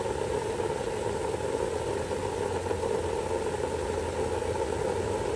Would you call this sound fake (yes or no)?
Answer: no